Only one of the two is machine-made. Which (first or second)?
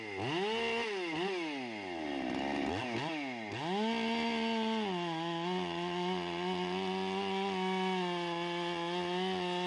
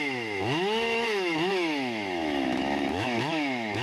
second